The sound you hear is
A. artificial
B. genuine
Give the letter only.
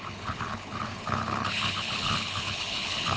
A